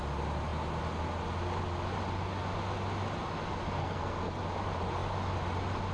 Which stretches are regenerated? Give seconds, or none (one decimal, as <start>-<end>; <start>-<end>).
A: 3.8-4.4